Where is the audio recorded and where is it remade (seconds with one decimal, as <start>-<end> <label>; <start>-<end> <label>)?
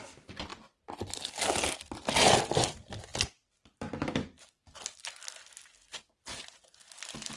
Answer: 0.0-7.4 recorded